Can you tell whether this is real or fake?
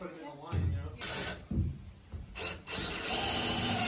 real